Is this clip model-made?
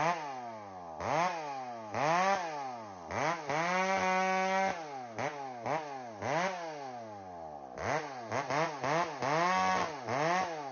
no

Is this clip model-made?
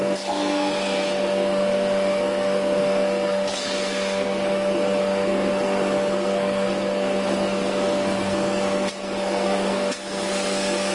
yes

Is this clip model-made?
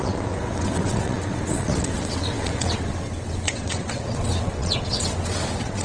yes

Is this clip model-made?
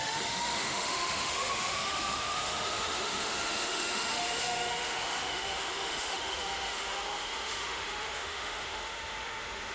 yes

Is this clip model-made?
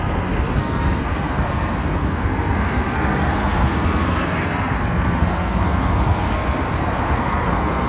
yes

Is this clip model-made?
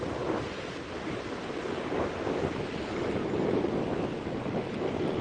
no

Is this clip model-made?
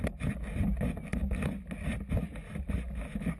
no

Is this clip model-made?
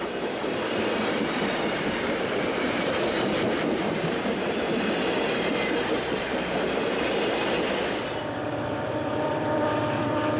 yes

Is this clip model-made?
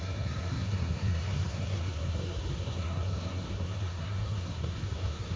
yes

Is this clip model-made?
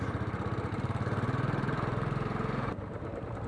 yes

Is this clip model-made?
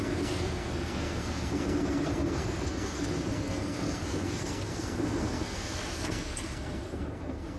yes